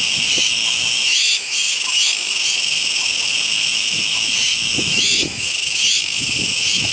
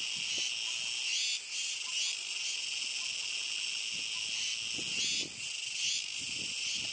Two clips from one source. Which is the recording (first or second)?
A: second